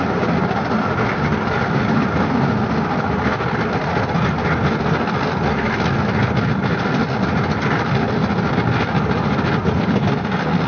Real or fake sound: real